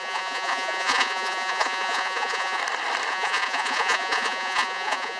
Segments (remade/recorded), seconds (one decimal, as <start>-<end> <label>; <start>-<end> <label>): 0.0-2.6 remade; 2.6-3.1 recorded; 3.1-5.2 remade